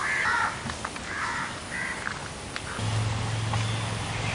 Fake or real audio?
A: real